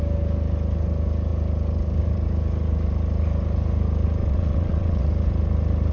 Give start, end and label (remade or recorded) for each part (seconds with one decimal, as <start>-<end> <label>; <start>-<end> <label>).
0.0-4.2 recorded; 4.2-5.1 remade; 5.1-5.9 recorded

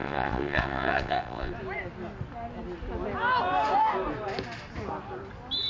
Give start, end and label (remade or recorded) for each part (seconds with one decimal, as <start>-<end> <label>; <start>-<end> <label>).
0.0-1.5 remade; 1.5-5.7 recorded

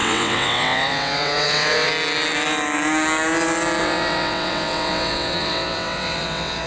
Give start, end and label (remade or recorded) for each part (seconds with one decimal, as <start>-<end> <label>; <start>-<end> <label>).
0.0-1.9 remade; 1.9-3.8 recorded; 3.8-6.7 remade